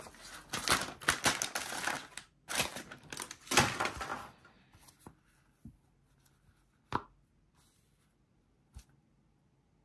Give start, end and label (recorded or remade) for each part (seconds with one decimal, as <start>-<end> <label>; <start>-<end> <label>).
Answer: 0.0-9.8 recorded